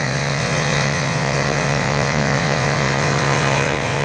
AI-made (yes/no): yes